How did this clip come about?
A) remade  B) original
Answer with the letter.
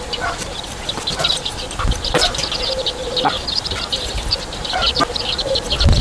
B